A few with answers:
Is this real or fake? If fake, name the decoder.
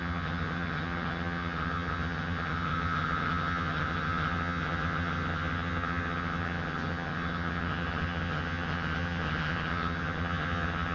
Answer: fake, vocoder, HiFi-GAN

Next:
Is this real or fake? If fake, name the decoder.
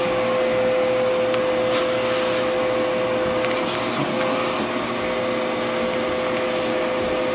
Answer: real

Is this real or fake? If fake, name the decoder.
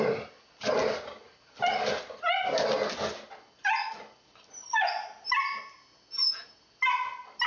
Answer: real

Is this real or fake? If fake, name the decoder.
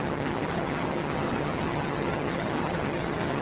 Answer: fake, vocoder, HiFi-GAN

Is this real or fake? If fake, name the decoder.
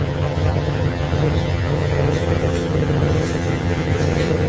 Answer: fake, vocoder, HiFi-GAN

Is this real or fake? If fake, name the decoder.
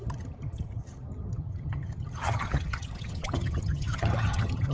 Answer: fake, vocoder, HiFi-GAN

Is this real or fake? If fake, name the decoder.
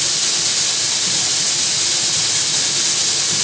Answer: real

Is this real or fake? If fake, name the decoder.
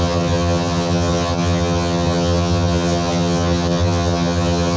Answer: fake, vocoder, HiFi-GAN